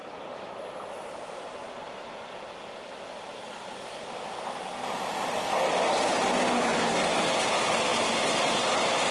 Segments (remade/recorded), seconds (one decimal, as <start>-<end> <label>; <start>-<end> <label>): 0.0-6.7 recorded; 6.7-7.2 remade; 7.2-9.1 recorded